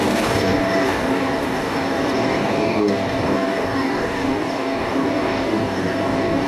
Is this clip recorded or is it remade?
remade